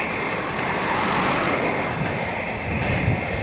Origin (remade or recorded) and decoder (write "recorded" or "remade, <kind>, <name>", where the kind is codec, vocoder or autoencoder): recorded